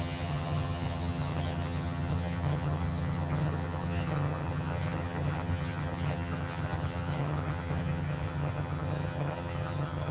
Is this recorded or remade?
remade